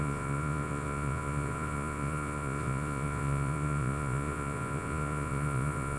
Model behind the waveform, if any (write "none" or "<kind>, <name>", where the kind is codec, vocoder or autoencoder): vocoder, Vocos